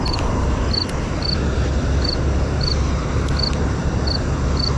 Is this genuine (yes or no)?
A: yes